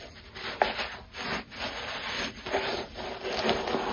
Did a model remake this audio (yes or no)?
no